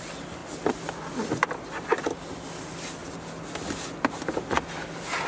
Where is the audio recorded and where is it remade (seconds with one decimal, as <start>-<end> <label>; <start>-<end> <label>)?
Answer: 0.0-5.3 recorded